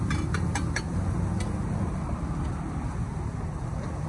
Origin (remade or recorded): recorded